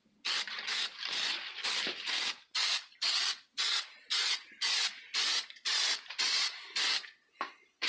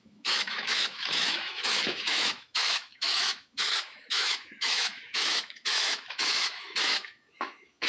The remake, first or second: second